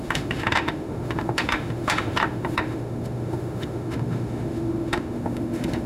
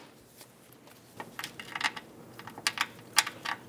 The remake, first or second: first